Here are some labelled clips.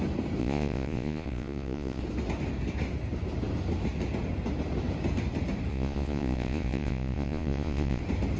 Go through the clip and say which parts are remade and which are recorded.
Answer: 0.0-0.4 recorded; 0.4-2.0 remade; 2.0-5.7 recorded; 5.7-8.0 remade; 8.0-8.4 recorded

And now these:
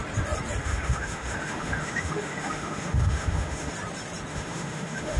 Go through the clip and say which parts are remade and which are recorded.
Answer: 0.0-0.6 recorded; 0.6-3.7 remade; 3.7-4.3 recorded; 4.3-5.2 remade

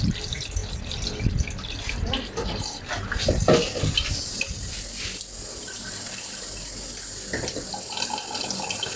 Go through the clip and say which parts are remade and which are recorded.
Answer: 0.0-9.0 recorded

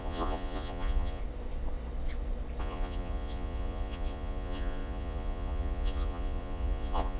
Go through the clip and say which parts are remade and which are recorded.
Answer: 0.0-1.2 remade; 1.2-2.6 recorded; 2.6-7.2 remade